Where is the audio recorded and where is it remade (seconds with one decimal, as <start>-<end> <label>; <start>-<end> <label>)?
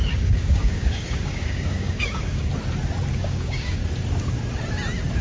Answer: 0.0-2.5 remade; 2.5-3.1 recorded; 3.1-3.8 remade; 3.8-5.2 recorded